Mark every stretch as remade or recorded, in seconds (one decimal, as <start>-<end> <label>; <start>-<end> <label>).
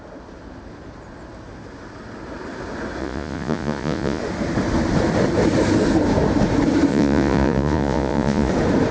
0.0-3.0 recorded; 3.0-4.2 remade; 4.2-6.9 recorded; 6.9-8.5 remade; 8.5-8.9 recorded